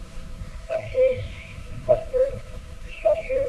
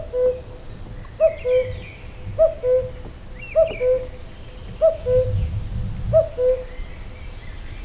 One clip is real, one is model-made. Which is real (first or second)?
second